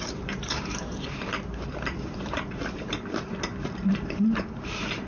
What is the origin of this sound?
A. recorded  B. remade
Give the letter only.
B